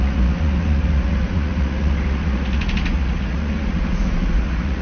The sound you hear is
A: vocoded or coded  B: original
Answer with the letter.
A